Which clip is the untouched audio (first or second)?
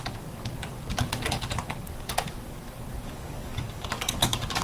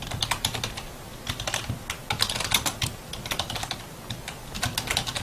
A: second